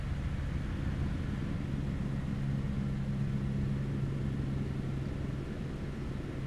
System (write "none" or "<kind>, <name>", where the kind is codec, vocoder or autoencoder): none